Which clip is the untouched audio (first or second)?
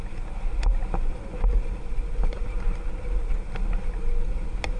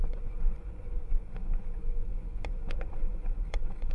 first